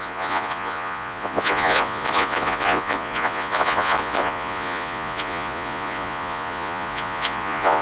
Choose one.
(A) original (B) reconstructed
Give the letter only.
B